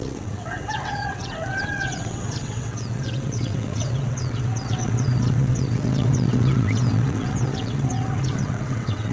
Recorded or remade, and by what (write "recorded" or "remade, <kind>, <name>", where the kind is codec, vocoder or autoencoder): remade, vocoder, WaveNeXt